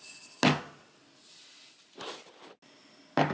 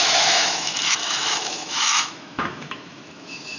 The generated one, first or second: second